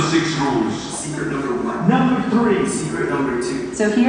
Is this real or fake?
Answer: real